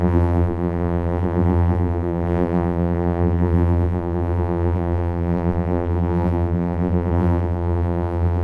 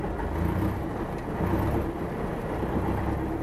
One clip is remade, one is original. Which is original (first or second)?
second